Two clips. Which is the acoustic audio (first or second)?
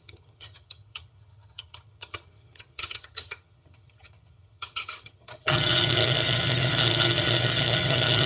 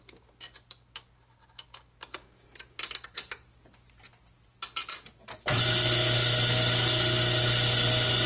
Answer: second